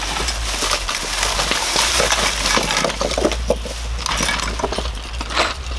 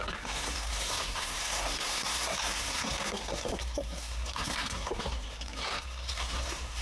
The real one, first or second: first